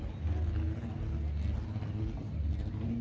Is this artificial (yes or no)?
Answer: no